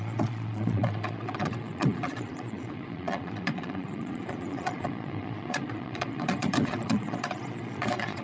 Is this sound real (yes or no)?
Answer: no